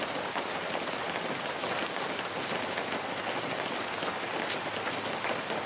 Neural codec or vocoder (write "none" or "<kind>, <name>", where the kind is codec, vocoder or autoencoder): none